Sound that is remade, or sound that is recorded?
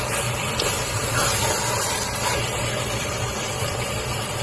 remade